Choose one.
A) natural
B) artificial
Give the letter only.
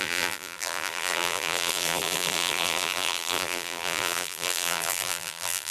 B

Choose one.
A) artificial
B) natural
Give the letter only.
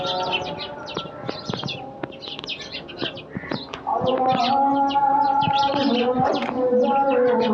B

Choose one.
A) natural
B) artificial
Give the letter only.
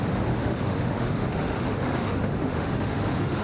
B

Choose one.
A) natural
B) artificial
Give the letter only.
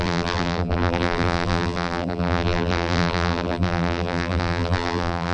B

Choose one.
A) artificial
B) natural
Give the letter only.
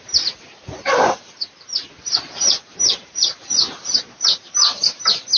A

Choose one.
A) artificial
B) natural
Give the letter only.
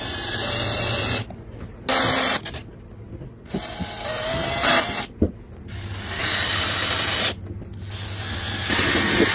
B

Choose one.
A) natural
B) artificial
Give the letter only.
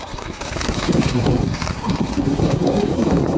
B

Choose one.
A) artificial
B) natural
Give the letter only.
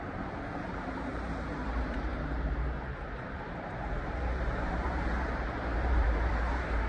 A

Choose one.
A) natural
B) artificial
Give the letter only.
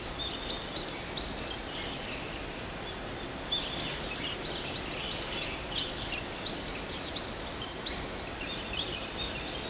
A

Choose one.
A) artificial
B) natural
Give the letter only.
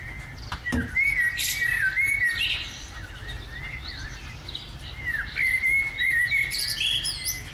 B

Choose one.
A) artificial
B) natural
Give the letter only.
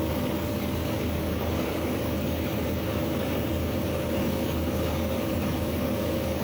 A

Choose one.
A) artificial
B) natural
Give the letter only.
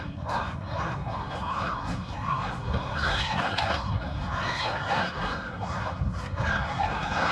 A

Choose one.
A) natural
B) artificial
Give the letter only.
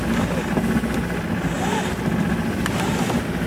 A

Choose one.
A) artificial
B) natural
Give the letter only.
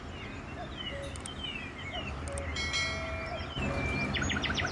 B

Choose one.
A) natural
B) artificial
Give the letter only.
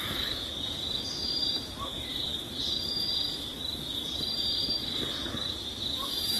B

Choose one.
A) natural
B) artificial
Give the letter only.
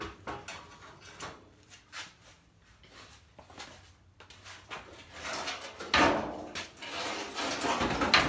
A